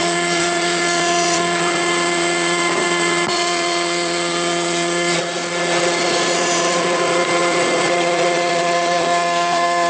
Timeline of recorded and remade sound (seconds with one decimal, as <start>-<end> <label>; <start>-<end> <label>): 0.0-9.9 remade